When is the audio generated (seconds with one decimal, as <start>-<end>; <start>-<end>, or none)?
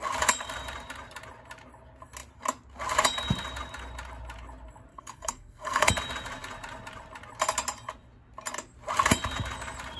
4.9-5.9